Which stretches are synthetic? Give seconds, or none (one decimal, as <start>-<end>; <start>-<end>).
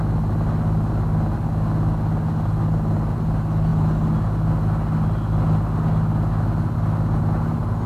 none